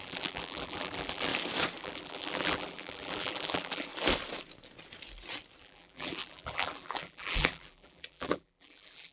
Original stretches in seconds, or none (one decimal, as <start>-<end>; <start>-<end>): 1.3-1.8; 3.9-5.6

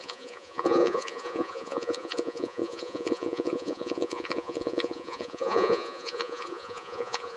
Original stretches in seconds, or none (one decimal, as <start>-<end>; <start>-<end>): none

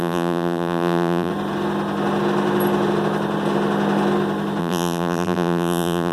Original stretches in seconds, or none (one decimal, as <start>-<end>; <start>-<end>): 1.3-4.6

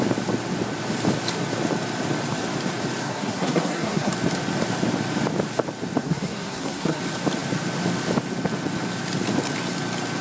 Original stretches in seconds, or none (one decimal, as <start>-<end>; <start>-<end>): 0.0-3.0; 4.1-6.0; 7.0-10.2

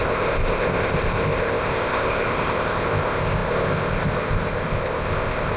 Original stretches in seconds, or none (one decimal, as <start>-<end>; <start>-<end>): none

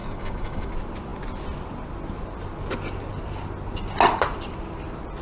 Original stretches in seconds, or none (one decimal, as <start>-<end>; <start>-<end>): 0.7-5.2